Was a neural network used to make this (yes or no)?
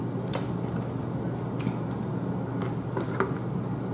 no